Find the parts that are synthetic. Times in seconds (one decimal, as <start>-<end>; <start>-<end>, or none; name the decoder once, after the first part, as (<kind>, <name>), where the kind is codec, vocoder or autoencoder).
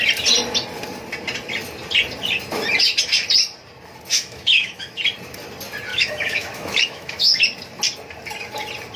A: 4.1-5.0 (autoencoder, DAC-VAE); 5.9-7.4